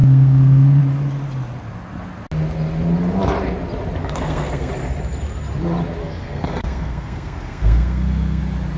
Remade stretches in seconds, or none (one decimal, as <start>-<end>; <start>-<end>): 0.0-0.8; 4.0-4.7; 6.0-8.4